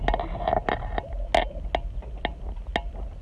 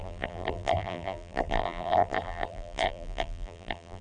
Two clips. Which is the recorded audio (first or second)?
first